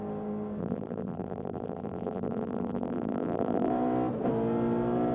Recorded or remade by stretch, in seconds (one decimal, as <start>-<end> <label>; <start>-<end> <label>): 0.0-0.6 recorded; 0.6-3.7 remade; 3.7-5.1 recorded